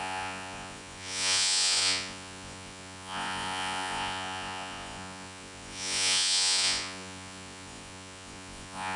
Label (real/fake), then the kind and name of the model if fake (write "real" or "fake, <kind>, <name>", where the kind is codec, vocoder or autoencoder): fake, vocoder, Vocos